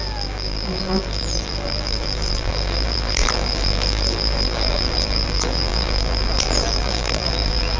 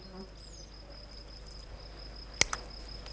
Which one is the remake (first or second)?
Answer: first